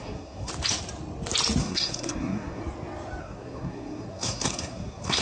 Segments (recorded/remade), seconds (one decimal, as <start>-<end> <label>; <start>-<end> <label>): 0.0-0.5 remade; 0.5-1.6 recorded; 1.6-2.6 remade; 2.6-3.2 recorded; 3.2-5.2 remade